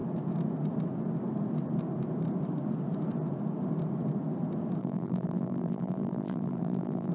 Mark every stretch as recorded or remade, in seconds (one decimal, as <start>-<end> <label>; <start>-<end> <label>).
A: 0.0-4.8 recorded; 4.8-7.1 remade

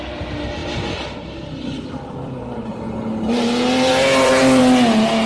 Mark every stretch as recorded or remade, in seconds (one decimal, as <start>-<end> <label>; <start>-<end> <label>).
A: 0.0-0.6 recorded; 0.6-3.2 remade; 3.2-3.9 recorded; 3.9-4.6 remade; 4.6-5.3 recorded

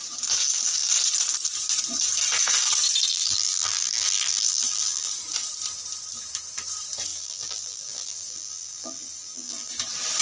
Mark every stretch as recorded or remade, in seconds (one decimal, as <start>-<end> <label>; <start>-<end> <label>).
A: 0.0-3.1 recorded; 3.1-5.1 remade; 5.1-7.1 recorded; 7.1-9.7 remade; 9.7-10.2 recorded

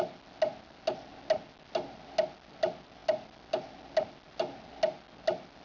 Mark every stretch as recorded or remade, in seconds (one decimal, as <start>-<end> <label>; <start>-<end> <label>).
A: 0.0-5.6 recorded

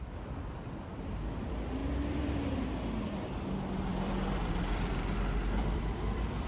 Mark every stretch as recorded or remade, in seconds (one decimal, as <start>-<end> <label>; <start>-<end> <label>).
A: 0.0-6.5 remade

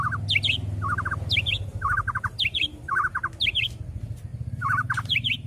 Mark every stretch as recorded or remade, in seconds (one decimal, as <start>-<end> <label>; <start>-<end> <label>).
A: 0.0-4.3 recorded; 4.3-5.5 remade